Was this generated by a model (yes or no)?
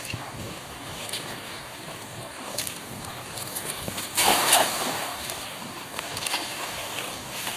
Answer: yes